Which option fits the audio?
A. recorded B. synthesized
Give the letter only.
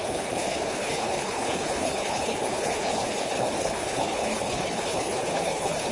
B